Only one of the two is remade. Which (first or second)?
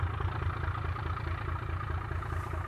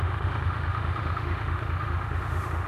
second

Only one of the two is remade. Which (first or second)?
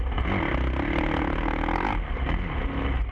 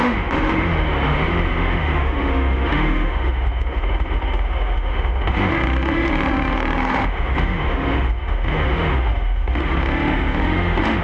second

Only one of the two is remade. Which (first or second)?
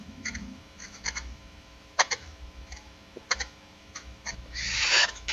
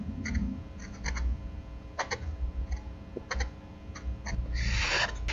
first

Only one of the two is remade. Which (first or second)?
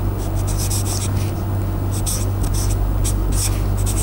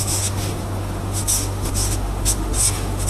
second